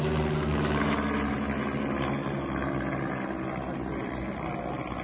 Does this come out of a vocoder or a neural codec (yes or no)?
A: no